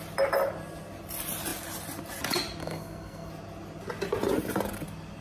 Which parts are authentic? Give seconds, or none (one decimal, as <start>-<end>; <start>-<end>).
0.0-2.6; 3.3-5.2